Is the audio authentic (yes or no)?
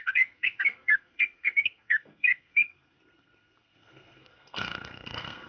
no